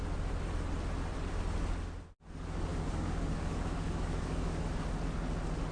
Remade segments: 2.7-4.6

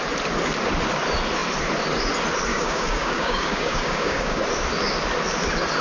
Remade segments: 2.5-4.4

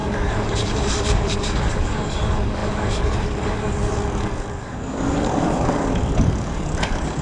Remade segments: 0.0-7.2

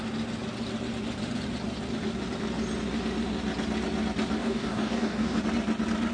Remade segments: 4.4-5.4

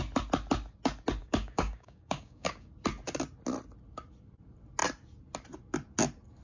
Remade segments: 1.2-2.7